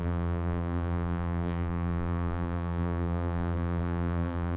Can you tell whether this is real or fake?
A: fake